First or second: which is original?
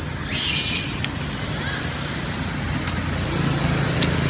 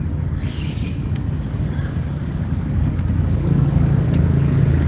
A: first